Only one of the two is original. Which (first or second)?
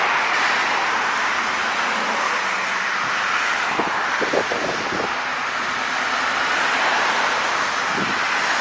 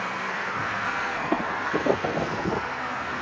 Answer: first